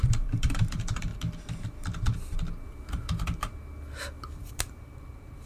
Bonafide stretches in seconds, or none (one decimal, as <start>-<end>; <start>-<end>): 1.1-4.3